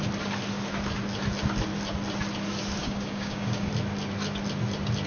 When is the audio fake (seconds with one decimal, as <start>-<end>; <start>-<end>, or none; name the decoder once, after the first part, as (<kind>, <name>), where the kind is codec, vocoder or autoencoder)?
2.8-3.7 (codec, DAC)